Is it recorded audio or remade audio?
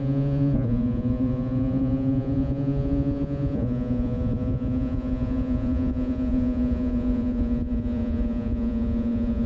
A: remade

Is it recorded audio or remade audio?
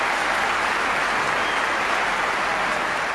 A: recorded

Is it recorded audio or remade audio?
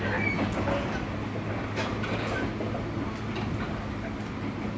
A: recorded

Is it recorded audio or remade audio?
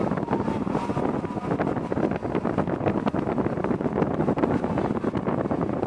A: recorded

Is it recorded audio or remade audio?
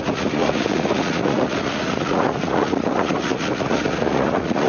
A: remade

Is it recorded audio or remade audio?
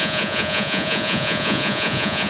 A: remade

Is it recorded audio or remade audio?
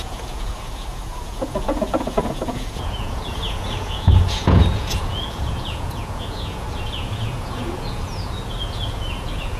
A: remade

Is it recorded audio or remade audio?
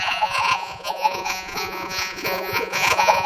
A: remade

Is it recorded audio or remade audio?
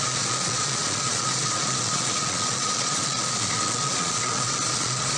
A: remade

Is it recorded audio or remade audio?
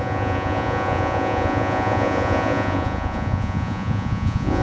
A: remade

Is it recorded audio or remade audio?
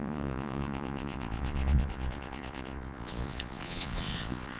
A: remade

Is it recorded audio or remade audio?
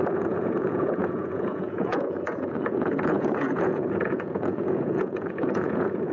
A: remade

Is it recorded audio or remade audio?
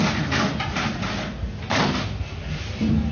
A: recorded